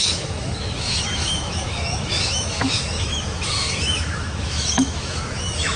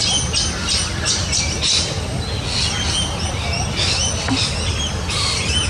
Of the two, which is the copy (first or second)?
first